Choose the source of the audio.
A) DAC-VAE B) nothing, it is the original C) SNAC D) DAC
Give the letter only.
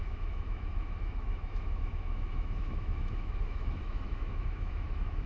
A